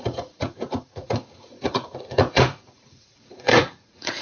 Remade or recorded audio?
remade